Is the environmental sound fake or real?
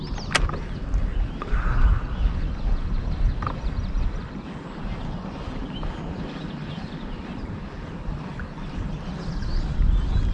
real